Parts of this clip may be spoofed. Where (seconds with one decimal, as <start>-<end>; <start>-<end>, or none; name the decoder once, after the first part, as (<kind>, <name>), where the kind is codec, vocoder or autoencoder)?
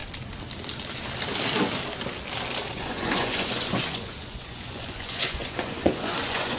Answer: 2.7-6.6 (vocoder, Vocos)